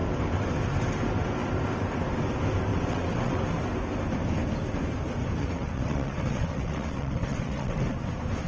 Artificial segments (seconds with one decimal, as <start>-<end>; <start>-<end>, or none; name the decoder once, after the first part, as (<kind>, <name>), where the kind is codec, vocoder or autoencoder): 2.7-3.4 (vocoder, WaveNeXt); 5.4-8.1